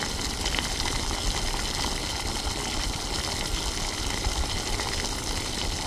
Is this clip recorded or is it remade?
recorded